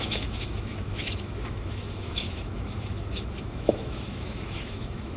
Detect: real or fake fake